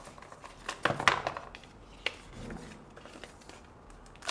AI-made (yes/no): no